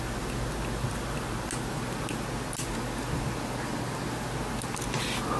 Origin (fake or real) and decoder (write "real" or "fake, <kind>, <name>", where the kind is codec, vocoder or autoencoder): real